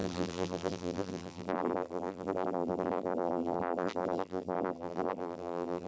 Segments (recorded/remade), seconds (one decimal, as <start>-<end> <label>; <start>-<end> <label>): 0.0-5.9 remade